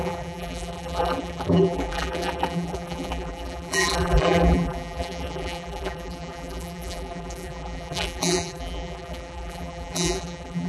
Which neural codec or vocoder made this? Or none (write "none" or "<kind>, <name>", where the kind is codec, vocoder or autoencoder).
vocoder, BigVGAN v2